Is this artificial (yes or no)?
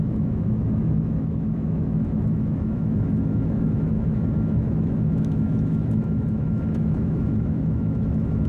yes